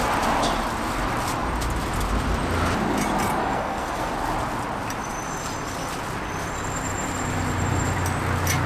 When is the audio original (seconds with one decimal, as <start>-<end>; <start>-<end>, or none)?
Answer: 0.0-3.4; 4.1-8.7